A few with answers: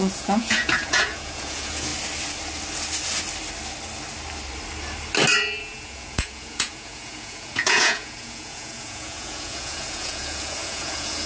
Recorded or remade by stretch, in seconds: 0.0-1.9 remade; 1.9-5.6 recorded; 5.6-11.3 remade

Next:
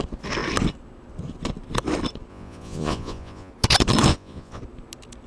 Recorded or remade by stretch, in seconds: 0.0-2.3 recorded; 2.3-3.5 remade; 3.5-4.1 recorded; 4.1-4.6 remade; 4.6-5.3 recorded